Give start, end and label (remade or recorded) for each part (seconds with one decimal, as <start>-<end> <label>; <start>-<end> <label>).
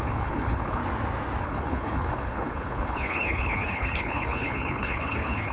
0.0-0.8 remade; 0.8-1.4 recorded; 1.4-5.5 remade